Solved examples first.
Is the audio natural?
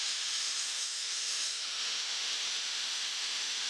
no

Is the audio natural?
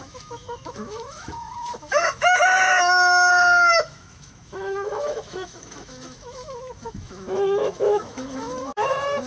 no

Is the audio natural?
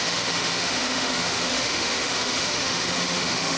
no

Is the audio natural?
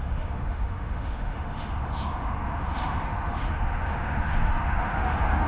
no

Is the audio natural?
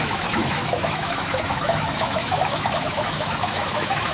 no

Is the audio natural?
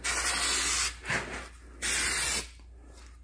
yes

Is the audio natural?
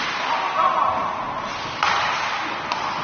yes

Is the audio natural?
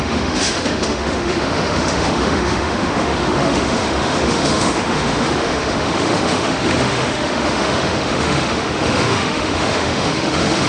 no